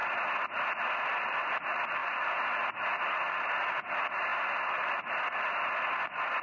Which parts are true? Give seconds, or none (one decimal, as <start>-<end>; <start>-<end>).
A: 0.0-6.4